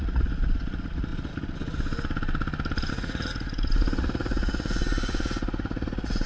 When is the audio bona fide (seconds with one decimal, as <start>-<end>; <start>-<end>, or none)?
1.1-2.9